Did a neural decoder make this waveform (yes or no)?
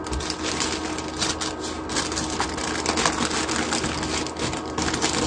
no